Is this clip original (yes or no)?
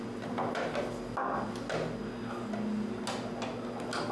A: yes